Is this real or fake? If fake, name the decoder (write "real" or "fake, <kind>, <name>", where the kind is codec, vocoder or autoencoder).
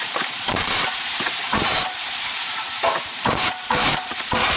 fake, vocoder, BigVGAN v2